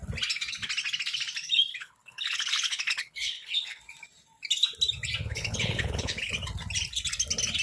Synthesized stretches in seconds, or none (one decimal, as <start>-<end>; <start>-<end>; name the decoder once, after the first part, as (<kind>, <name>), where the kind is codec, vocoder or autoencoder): 1.7-3.8 (codec, HILCodec); 5.2-6.3